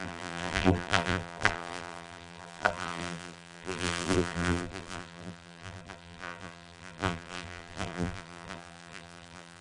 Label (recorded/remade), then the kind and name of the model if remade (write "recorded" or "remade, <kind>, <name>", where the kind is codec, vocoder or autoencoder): remade, vocoder, BigVGAN v2